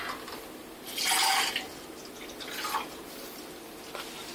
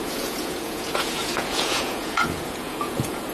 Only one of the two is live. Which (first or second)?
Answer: first